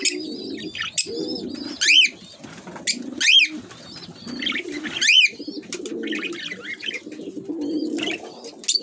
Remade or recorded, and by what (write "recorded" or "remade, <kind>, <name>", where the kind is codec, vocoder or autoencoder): recorded